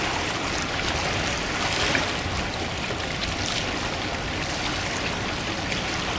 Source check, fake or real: real